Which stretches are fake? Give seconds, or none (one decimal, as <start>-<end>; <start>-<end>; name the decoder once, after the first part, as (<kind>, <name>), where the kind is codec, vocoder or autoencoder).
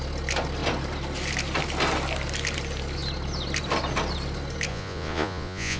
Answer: 4.7-5.8 (vocoder, Vocos)